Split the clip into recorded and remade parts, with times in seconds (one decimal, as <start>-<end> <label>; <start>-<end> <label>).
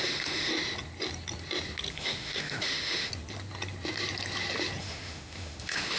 0.0-0.5 remade; 0.5-1.9 recorded; 1.9-3.1 remade; 3.1-4.8 recorded; 4.8-6.0 remade